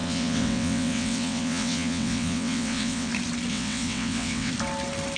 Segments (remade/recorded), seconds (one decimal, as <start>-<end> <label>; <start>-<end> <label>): 0.0-3.1 remade; 3.1-3.5 recorded; 3.5-4.5 remade; 4.5-5.2 recorded